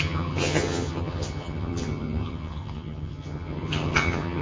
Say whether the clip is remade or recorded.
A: remade